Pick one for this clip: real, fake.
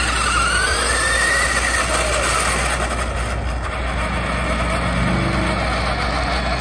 real